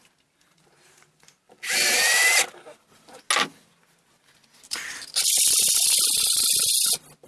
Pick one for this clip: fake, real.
real